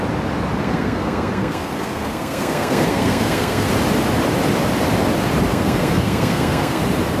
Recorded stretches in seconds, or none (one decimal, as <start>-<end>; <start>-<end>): 0.0-0.6; 3.7-5.5; 6.8-7.2